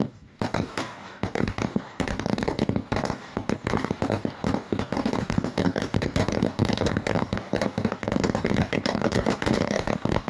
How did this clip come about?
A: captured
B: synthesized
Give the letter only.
B